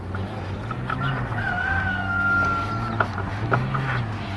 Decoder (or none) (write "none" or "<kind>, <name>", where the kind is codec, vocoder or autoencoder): none